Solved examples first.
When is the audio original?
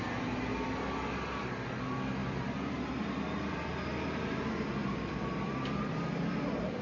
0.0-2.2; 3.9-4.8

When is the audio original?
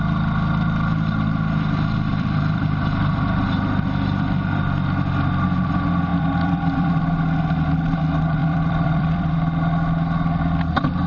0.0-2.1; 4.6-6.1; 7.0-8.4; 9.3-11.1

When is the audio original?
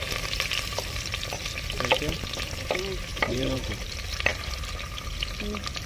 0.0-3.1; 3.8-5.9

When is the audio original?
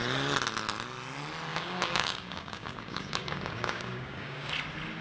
0.0-1.5; 4.5-5.0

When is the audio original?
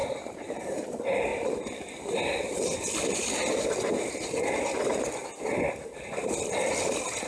0.7-7.3